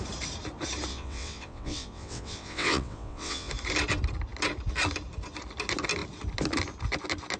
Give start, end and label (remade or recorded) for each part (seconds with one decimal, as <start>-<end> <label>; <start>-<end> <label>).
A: 0.0-0.9 recorded; 0.9-3.5 remade; 3.5-7.4 recorded